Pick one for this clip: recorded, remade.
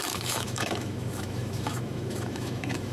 remade